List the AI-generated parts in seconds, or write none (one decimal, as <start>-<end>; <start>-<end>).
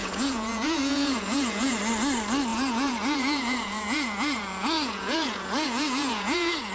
0.0-1.8; 2.5-6.7